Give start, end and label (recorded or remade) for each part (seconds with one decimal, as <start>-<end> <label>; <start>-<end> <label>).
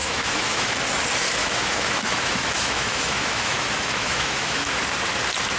0.0-0.7 remade; 0.7-1.4 recorded; 1.4-4.8 remade; 4.8-5.6 recorded